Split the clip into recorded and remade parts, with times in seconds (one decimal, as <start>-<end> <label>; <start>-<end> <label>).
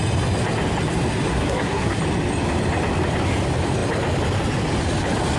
0.0-1.3 recorded; 1.3-2.0 remade; 2.0-5.4 recorded